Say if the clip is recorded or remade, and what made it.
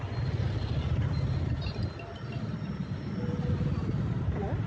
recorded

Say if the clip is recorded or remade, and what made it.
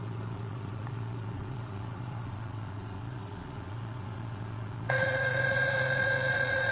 remade, vocoder, Vocos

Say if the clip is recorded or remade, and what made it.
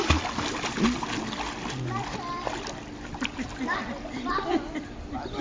recorded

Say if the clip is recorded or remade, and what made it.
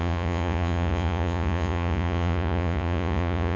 remade, vocoder, Vocos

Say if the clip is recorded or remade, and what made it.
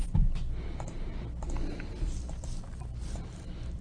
recorded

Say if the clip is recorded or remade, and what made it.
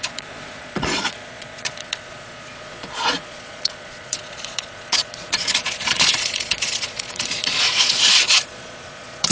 remade, vocoder, Vocos